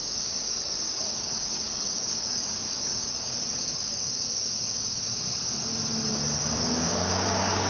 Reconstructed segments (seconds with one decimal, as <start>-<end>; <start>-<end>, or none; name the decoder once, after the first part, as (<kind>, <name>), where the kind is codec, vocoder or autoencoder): 0.0-5.1 (codec, DAC); 6.1-7.7